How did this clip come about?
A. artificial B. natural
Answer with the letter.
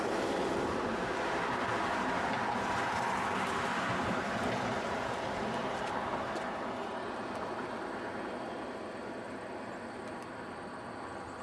B